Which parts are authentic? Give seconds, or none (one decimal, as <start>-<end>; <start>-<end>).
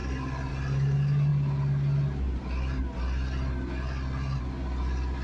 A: 0.0-5.2